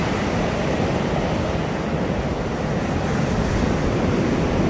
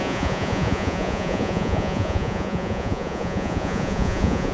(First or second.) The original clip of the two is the first